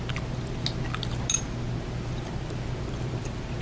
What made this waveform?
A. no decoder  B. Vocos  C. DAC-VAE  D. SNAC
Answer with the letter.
A